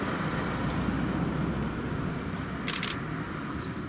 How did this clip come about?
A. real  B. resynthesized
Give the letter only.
A